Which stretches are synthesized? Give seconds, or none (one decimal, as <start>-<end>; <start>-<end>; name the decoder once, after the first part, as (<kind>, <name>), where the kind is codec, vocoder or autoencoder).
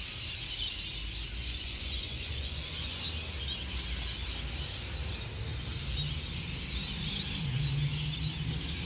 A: 1.4-3.0 (vocoder, Vocos)